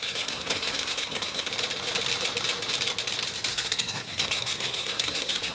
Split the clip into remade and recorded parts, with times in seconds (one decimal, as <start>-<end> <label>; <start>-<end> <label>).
0.0-1.5 remade; 1.5-3.5 recorded; 3.5-5.5 remade